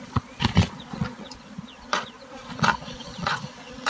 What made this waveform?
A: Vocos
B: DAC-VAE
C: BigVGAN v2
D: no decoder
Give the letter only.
A